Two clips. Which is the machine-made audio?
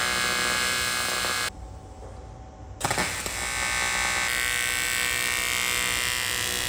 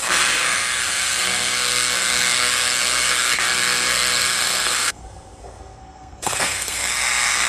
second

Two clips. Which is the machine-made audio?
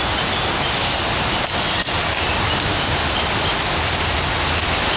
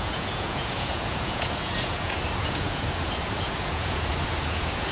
second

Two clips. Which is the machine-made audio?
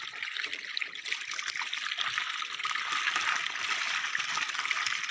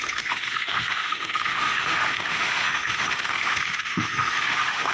second